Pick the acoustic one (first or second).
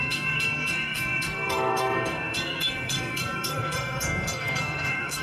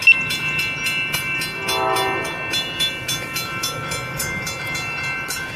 second